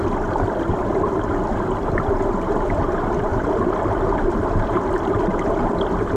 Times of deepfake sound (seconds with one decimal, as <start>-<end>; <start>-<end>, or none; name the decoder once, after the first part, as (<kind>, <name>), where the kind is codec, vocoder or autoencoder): none